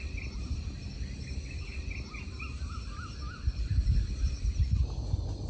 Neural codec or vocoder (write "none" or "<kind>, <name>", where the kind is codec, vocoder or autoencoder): none